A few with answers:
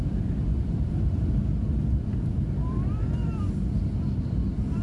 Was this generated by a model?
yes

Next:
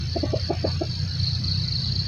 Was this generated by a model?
no